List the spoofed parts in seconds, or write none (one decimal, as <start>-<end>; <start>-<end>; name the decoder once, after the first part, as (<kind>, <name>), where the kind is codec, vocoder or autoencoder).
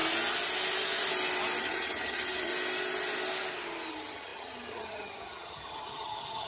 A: 1.6-2.5 (vocoder, HiFi-GAN); 3.9-6.5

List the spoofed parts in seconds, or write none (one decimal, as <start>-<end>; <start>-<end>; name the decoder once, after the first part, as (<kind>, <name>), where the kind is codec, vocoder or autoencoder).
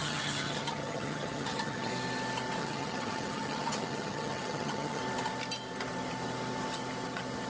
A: 0.0-1.9 (vocoder, HiFi-GAN); 2.6-5.0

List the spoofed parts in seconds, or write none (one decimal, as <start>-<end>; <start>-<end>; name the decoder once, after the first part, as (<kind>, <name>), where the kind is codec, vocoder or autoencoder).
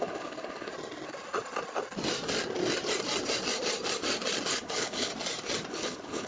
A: 0.0-0.7 (codec, HILCodec); 4.5-5.1; 5.7-6.3